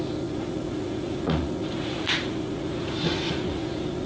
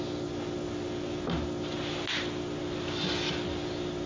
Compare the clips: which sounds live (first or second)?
second